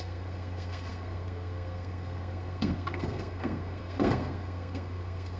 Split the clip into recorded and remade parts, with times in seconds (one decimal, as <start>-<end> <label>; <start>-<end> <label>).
0.0-5.4 remade